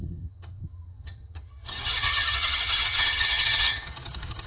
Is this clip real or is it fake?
fake